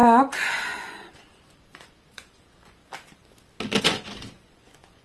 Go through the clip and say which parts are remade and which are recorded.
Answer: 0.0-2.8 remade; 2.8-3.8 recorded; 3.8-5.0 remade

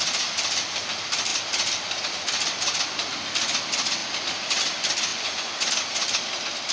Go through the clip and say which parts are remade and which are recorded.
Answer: 0.0-5.1 recorded; 5.1-5.7 remade; 5.7-6.7 recorded

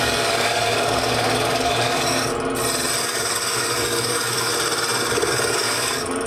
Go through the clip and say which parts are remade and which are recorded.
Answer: 0.0-2.3 remade; 2.3-3.0 recorded; 3.0-4.5 remade; 4.5-5.1 recorded; 5.1-6.3 remade

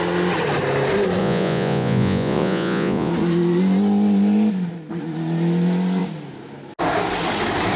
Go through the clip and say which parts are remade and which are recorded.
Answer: 0.0-1.2 recorded; 1.2-3.1 remade; 3.1-7.8 recorded

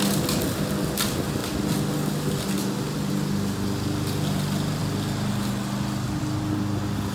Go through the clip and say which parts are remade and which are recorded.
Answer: 0.0-7.1 recorded